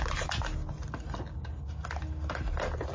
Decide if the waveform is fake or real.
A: real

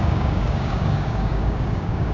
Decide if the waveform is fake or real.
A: fake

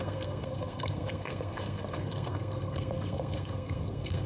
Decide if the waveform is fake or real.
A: fake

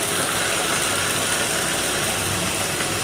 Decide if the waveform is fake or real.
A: real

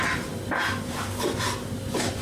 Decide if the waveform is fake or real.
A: real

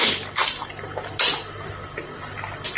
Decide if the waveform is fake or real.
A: real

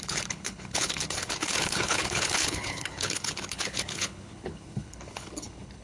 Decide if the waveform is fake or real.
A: fake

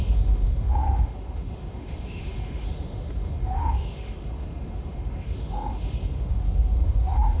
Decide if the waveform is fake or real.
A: fake